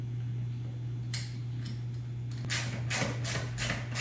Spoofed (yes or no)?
no